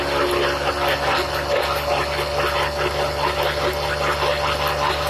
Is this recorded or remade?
recorded